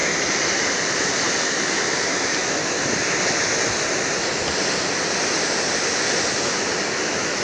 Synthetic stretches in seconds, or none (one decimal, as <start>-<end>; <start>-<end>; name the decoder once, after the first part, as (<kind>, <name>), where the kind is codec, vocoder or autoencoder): 1.4-2.6 (autoencoder, DAC-VAE); 7.0-7.4